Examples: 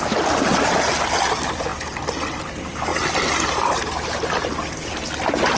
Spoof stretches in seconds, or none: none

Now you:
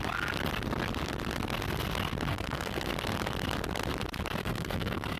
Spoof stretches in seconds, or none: 2.3-2.9 (codec, SNAC); 4.4-5.2

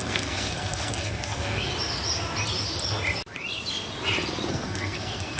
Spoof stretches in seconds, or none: 0.0-1.7 (codec, SNAC); 4.5-5.4

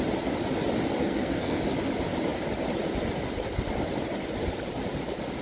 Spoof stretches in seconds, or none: 1.0-1.6 (codec, SNAC)

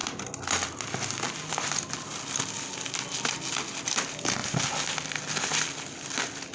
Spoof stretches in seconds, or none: none

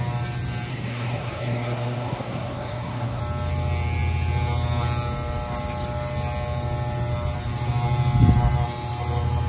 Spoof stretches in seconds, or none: 0.7-3.2 (codec, SNAC)

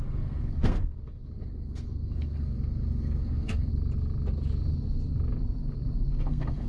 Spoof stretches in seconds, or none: 0.0-3.7 (codec, SNAC); 6.1-6.7

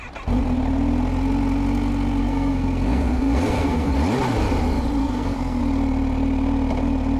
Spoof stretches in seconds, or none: 2.2-3.9 (codec, SNAC); 5.0-5.6